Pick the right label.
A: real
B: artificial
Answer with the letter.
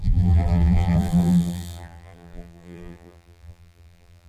B